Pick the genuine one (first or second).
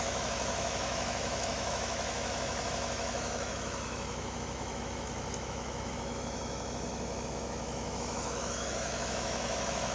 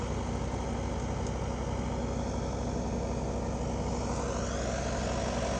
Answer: second